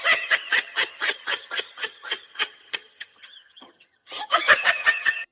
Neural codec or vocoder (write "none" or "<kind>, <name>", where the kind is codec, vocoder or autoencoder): vocoder, HiFi-GAN